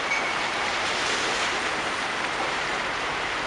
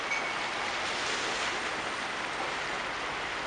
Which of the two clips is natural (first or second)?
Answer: second